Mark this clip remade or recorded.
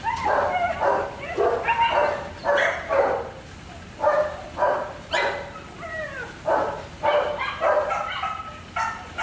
recorded